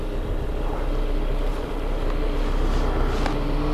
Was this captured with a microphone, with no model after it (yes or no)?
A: yes